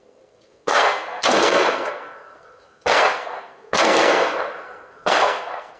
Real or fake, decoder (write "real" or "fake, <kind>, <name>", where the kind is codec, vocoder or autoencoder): fake, codec, SNAC